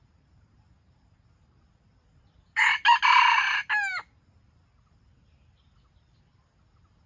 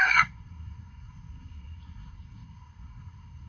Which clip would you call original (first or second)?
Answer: first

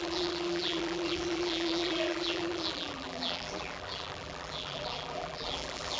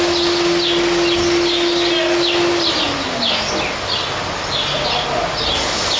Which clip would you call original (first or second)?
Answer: second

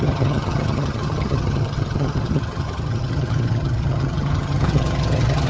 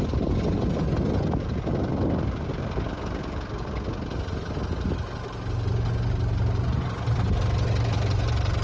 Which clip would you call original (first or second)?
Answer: second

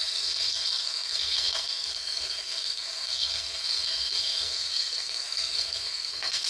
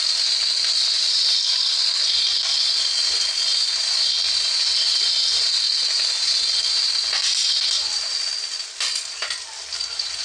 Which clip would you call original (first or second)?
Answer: second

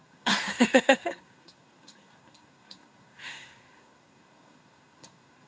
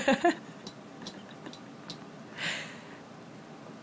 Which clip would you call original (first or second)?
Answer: second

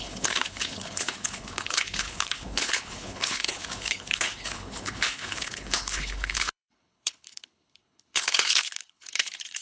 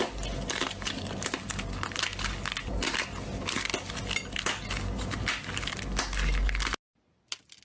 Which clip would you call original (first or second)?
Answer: second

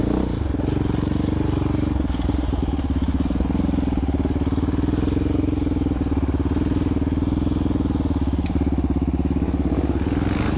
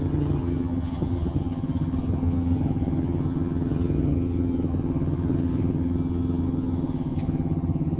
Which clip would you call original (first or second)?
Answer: first